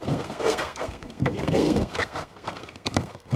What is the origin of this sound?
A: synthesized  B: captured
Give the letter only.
A